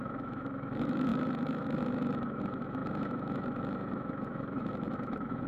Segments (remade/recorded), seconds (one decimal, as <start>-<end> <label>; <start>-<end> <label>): 0.0-5.5 remade